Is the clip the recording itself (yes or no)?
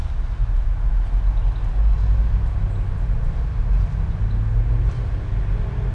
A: yes